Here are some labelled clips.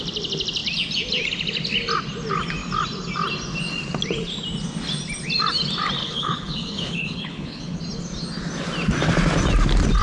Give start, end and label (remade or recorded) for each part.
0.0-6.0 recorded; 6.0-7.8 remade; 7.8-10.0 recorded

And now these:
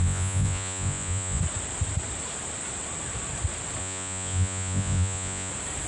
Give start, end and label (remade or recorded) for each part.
0.0-1.4 remade; 1.4-3.8 recorded; 3.8-5.5 remade; 5.5-5.9 recorded